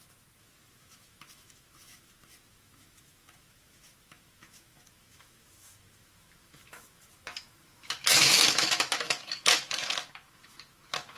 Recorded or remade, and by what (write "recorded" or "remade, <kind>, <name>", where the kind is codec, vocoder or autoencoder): remade, autoencoder, DAC-VAE